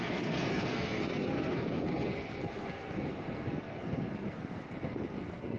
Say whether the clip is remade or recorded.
remade